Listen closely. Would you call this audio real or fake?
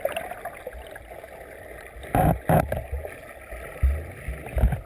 real